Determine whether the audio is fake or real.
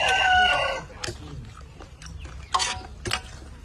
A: real